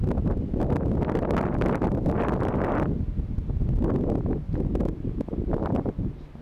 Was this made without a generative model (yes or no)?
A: yes